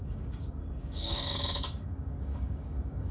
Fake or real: fake